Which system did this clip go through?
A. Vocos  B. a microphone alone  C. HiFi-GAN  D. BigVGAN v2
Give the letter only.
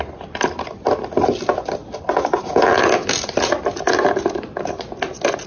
B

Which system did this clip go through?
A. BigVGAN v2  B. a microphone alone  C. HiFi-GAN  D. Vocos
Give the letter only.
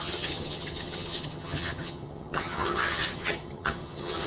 C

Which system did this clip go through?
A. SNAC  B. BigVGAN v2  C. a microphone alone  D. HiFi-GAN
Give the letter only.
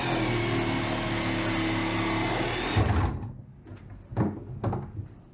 C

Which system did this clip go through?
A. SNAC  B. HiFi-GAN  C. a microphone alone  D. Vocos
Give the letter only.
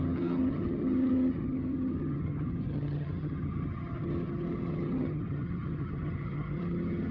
B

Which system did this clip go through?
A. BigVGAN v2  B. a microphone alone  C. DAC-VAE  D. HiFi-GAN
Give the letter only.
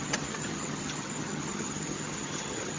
D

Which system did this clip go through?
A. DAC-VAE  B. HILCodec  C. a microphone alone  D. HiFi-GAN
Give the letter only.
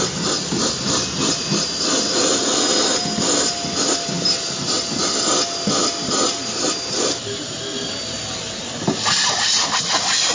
C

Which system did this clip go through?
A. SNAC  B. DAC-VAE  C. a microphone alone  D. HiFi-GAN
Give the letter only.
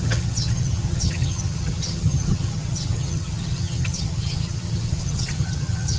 D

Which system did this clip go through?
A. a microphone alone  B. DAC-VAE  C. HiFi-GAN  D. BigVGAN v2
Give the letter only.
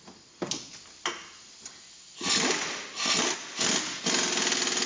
A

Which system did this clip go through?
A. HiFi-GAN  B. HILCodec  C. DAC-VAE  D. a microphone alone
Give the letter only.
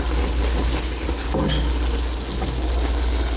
D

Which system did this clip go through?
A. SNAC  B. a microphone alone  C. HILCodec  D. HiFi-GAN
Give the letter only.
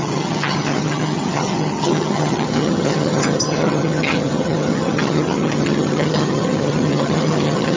D